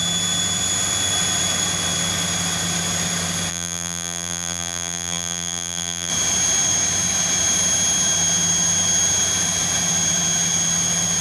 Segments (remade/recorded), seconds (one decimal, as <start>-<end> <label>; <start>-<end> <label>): 0.0-3.5 recorded; 3.5-6.1 remade; 6.1-11.2 recorded